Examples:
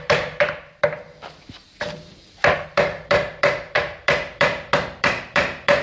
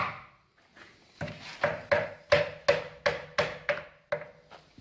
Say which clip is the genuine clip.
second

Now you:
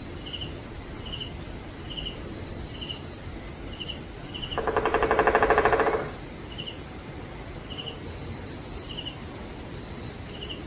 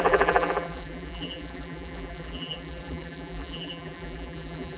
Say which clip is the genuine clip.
first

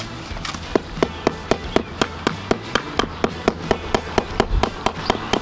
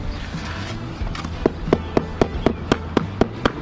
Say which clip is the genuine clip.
second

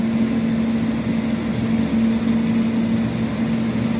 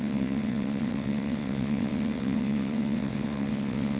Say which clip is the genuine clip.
first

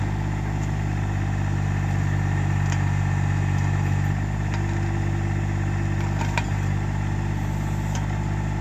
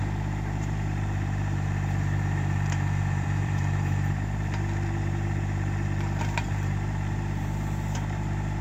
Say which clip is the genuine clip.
first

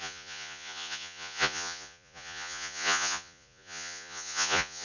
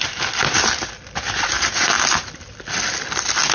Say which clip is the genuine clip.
second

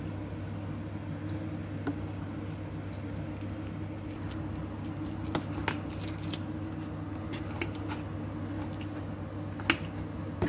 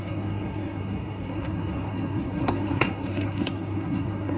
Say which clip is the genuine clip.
first